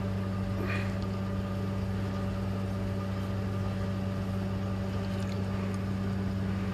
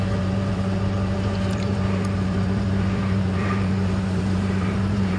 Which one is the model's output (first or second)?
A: second